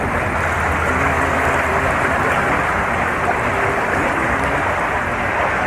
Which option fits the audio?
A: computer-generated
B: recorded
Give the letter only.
B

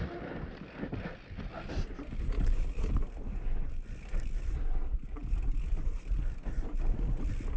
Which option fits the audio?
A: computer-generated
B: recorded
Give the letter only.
B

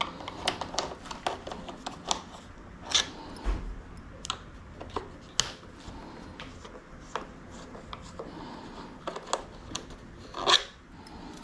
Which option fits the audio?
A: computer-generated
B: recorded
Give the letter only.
B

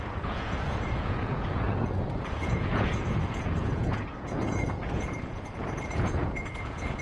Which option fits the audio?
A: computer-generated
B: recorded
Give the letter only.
A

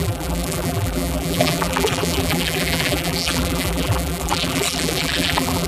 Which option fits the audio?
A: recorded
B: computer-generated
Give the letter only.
B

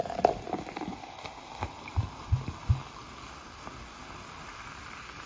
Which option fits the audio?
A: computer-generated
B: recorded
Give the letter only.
B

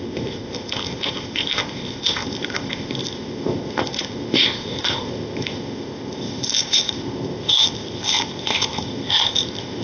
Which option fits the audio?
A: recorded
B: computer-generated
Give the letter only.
B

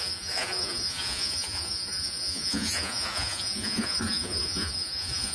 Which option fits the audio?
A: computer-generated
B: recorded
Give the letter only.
A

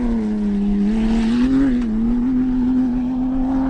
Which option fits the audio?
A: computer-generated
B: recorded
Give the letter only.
B